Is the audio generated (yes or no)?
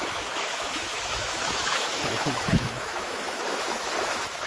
yes